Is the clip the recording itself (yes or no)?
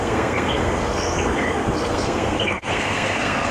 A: no